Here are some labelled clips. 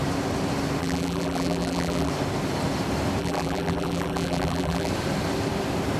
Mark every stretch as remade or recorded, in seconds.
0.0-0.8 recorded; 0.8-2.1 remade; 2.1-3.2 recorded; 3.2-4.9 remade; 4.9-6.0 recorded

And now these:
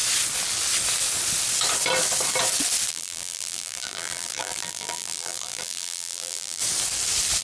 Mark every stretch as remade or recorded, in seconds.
0.0-2.9 recorded; 2.9-6.6 remade; 6.6-7.4 recorded

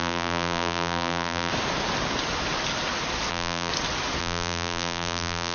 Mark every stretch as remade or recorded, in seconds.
0.0-1.5 remade; 1.5-3.3 recorded; 3.3-3.7 remade; 3.7-4.2 recorded; 4.2-5.5 remade

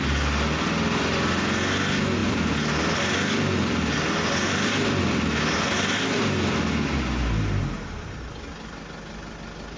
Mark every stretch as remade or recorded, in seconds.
0.0-2.2 recorded; 2.2-5.0 remade; 5.0-9.8 recorded

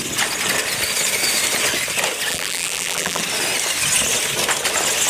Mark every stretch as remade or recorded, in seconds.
0.0-2.3 recorded; 2.3-3.2 remade; 3.2-5.1 recorded